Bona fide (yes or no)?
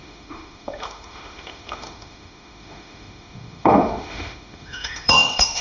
no